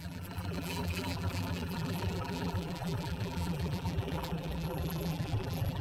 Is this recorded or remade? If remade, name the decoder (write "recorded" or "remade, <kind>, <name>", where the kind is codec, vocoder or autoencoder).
remade, vocoder, BigVGAN v2